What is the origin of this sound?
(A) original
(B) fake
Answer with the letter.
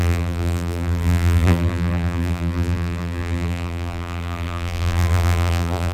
B